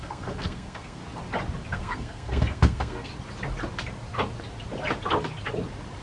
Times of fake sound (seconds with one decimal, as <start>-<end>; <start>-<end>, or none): 0.0-1.0; 1.7-3.1